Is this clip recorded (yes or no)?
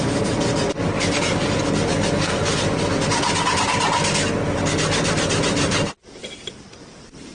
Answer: yes